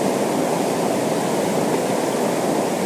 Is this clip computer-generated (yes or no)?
no